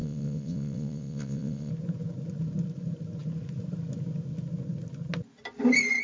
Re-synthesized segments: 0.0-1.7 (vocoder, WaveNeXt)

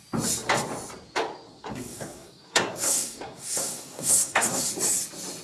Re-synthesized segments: 1.5-4.7 (codec, SNAC)

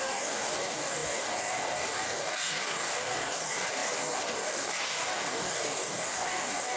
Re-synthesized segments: 0.0-6.8 (codec, DAC)

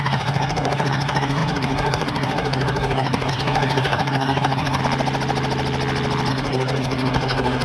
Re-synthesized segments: 0.0-4.8 (codec, SNAC); 6.3-7.6

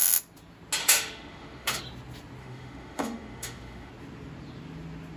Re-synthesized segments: 0.8-1.8 (autoencoder, DAC-VAE); 2.4-3.9

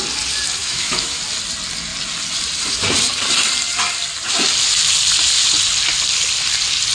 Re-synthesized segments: 0.6-1.2 (autoencoder, DAC-VAE)

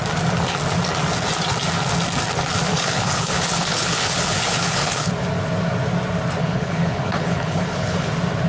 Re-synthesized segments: 2.7-5.1 (codec, HILCodec); 6.4-8.1